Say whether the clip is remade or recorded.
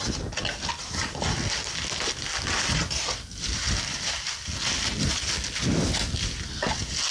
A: recorded